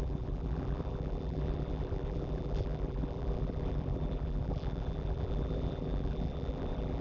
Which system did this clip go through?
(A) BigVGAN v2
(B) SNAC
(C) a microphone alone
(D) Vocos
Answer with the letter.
A